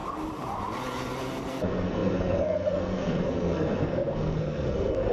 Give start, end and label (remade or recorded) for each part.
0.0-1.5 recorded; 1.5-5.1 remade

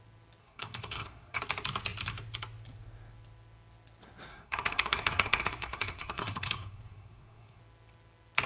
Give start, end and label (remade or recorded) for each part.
0.0-0.4 recorded; 0.4-1.4 remade; 1.4-4.3 recorded; 4.3-7.6 remade; 7.6-8.5 recorded

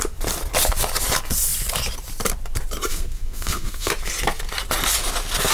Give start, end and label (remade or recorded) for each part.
0.0-2.9 recorded; 2.9-3.9 remade; 3.9-5.5 recorded